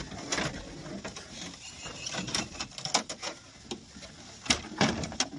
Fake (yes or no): no